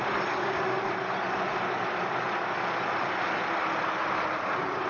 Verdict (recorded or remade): recorded